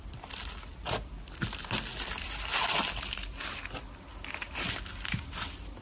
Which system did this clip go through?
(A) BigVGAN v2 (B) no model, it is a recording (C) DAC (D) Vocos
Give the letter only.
B